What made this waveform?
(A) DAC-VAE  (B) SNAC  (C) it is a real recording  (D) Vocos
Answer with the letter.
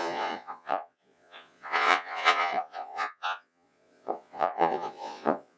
D